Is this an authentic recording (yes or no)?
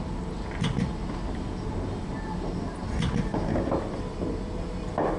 yes